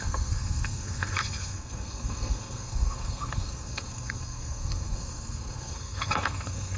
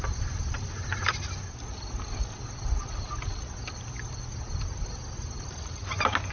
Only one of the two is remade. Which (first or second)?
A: first